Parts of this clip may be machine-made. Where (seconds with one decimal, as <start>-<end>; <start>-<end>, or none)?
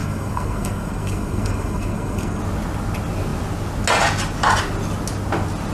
0.0-2.4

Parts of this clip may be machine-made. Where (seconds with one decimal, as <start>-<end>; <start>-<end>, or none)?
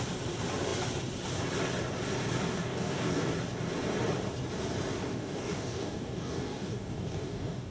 2.5-3.3; 5.0-7.7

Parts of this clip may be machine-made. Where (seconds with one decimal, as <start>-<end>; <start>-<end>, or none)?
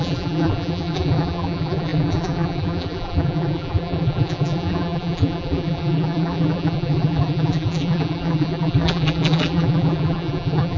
0.0-10.8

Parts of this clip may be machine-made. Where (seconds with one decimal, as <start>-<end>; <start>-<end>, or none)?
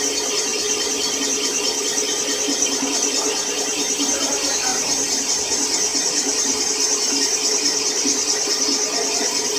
4.7-5.2